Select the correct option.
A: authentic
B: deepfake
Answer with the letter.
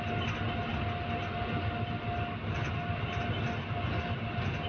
A